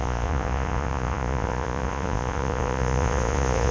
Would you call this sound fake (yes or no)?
yes